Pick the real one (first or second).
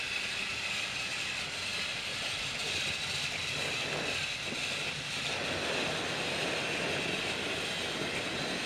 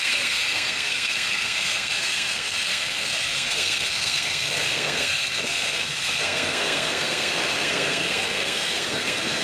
first